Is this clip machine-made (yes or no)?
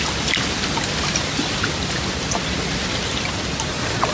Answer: no